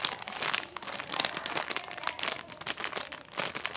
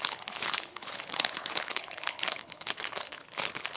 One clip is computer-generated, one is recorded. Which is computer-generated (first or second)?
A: second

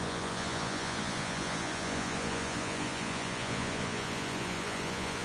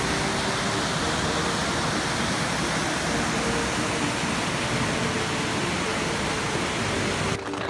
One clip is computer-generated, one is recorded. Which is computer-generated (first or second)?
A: first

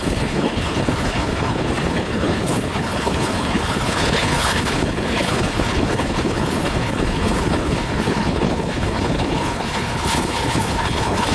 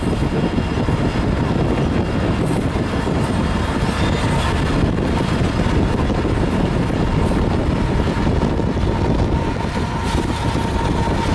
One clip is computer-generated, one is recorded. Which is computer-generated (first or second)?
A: first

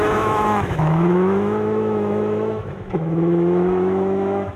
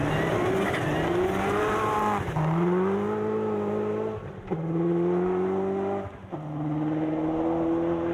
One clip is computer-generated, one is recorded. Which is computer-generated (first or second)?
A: first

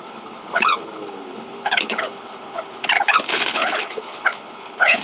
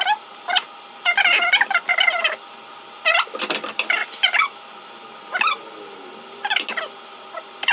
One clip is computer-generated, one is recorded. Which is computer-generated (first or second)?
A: first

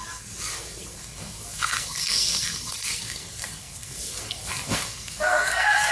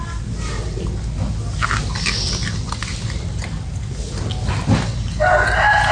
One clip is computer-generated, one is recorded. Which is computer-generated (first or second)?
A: first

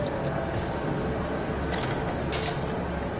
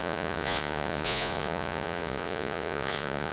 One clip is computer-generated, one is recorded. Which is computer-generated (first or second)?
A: second